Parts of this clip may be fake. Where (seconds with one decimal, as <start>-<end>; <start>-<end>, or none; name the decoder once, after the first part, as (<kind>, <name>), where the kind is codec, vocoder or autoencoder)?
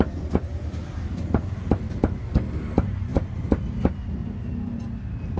0.0-3.1 (vocoder, BigVGAN v2); 3.8-4.2